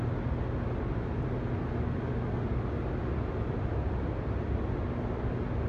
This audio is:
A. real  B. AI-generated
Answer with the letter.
A